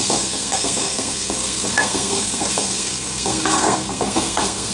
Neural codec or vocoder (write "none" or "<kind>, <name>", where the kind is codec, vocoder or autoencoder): codec, SNAC